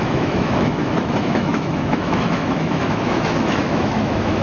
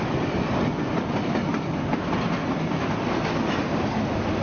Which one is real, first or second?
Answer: second